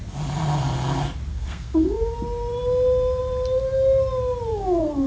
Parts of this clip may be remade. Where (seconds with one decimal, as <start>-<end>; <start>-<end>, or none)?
1.3-2.1; 4.5-5.1